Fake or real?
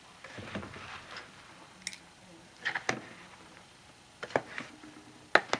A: real